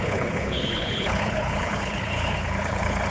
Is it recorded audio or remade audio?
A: remade